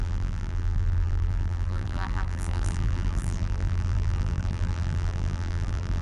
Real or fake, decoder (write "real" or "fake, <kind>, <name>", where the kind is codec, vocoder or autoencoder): fake, vocoder, BigVGAN v2